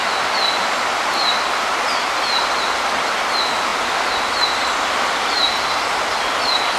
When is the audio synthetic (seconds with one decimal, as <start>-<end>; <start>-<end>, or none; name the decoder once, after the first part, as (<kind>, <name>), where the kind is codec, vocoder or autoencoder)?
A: none